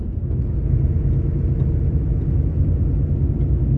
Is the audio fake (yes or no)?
no